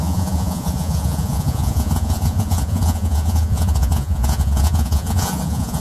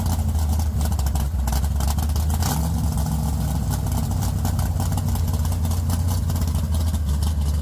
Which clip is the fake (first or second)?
first